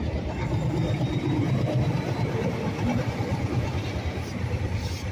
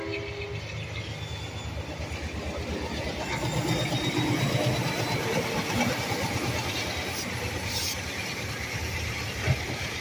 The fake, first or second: first